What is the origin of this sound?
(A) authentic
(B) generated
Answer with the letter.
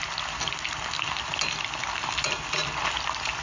A